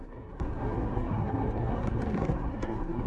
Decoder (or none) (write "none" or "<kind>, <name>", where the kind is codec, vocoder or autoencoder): codec, SNAC